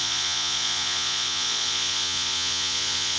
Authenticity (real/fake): fake